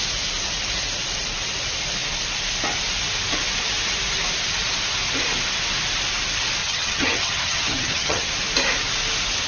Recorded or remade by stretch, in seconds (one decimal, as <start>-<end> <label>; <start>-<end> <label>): 0.0-6.6 recorded; 6.6-8.3 remade; 8.3-9.5 recorded